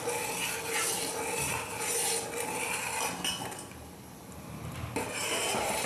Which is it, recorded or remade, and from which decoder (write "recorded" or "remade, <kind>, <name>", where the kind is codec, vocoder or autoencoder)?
recorded